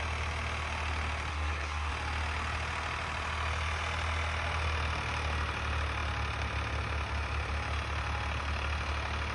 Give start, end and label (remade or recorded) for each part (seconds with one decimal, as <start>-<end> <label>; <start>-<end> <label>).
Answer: 0.0-1.3 recorded; 1.3-1.9 remade; 1.9-9.3 recorded